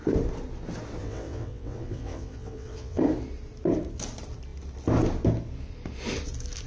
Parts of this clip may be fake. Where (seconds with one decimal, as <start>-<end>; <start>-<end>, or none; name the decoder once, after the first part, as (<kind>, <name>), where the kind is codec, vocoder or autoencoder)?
1.0-3.0 (vocoder, WaveNeXt)